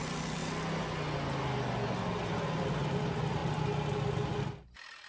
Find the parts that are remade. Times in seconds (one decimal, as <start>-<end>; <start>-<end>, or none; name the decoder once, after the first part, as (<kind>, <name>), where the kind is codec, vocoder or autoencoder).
none